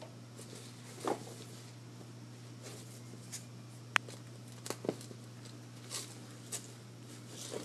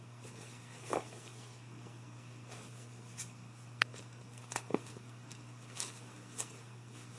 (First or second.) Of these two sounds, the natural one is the first